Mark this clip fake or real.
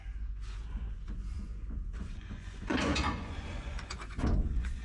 fake